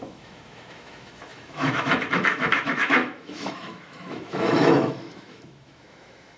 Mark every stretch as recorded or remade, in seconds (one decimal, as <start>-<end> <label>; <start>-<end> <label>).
0.0-6.4 remade